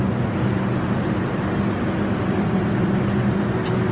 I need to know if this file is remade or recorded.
recorded